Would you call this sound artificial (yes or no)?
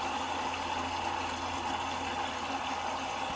no